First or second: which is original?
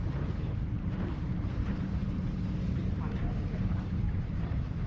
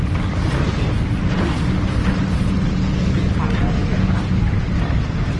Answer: second